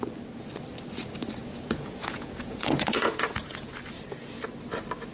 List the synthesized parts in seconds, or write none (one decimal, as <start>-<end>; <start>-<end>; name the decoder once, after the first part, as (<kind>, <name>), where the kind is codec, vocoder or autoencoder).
1.4-3.7 (vocoder, Vocos)